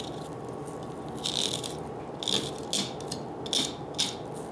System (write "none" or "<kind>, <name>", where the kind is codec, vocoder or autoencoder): none